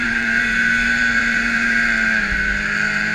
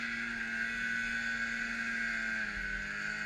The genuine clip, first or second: second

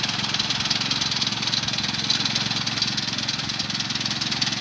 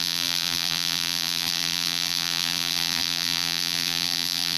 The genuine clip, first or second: first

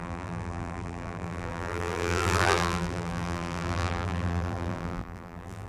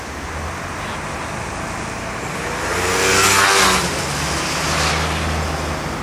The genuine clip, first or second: second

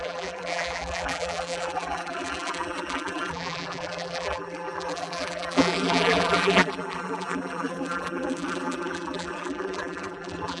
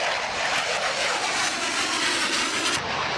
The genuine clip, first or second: second